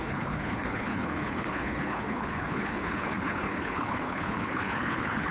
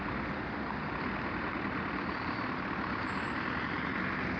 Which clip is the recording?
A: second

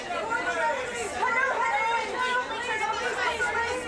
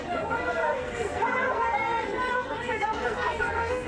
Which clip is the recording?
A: first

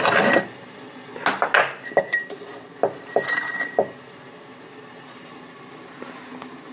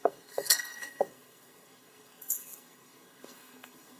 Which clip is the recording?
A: first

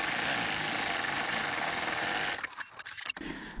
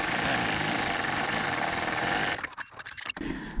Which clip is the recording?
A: first